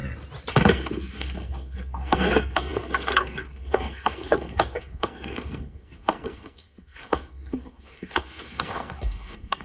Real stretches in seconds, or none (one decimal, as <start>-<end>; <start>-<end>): 0.0-0.5